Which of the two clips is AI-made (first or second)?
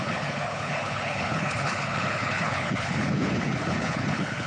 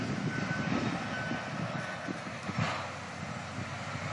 first